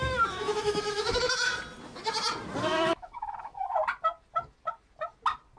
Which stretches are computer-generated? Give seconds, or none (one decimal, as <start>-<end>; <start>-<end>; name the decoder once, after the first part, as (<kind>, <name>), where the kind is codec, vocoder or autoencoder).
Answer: 0.0-1.5 (autoencoder, DAC-VAE); 2.6-3.8